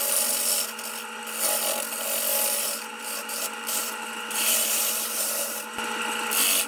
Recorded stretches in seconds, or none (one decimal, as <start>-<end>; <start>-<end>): 0.0-2.3; 5.8-6.7